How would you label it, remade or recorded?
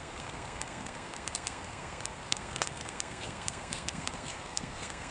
remade